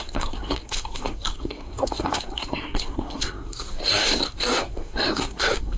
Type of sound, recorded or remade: remade